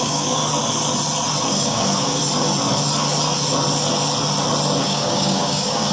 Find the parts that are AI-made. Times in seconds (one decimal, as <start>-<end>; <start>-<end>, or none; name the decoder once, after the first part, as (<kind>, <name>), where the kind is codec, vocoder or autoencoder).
0.0-0.4 (codec, DAC); 1.4-2.2; 4.8-5.9